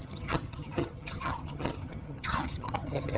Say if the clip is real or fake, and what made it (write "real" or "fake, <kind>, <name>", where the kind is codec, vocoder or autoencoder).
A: fake, vocoder, HiFi-GAN